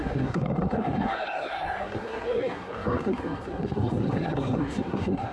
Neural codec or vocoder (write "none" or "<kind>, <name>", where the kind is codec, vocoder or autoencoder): codec, SNAC